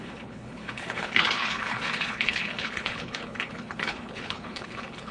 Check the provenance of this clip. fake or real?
fake